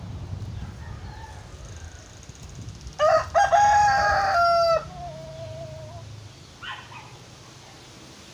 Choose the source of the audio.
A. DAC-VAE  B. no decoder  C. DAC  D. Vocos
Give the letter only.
B